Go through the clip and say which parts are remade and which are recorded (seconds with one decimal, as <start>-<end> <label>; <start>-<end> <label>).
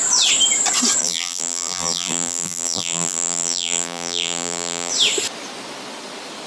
0.0-1.0 recorded; 1.0-4.9 remade; 4.9-6.5 recorded